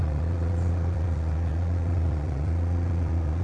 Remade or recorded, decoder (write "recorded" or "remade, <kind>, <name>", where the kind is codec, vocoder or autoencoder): remade, vocoder, Vocos